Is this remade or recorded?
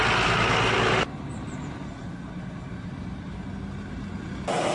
recorded